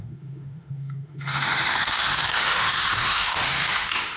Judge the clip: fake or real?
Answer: fake